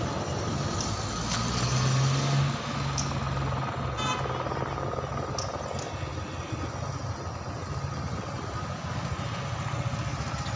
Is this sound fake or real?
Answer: real